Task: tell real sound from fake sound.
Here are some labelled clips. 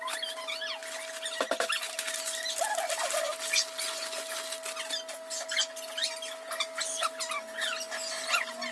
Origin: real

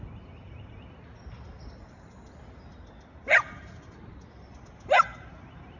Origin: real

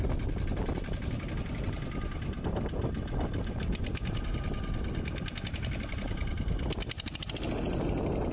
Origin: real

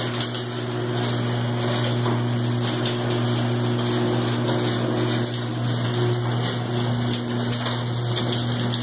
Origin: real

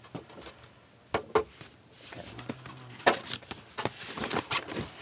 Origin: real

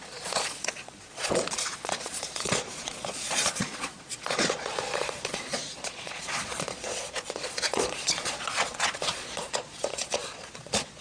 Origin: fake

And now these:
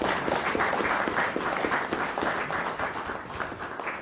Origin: real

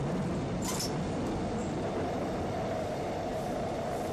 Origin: real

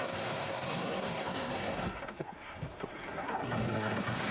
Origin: fake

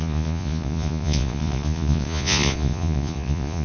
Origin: fake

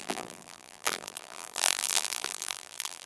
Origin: fake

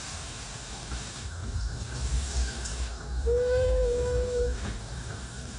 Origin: fake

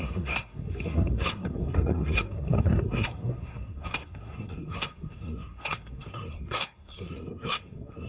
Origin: fake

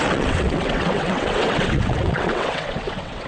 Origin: fake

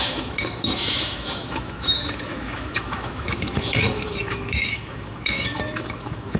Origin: fake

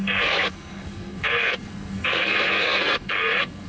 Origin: fake